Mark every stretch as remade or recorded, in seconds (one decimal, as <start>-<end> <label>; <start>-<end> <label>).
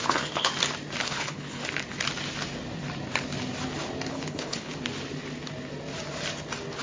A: 0.0-0.5 remade; 0.5-1.0 recorded; 1.0-1.6 remade; 1.6-4.1 recorded; 4.1-4.7 remade; 4.7-6.8 recorded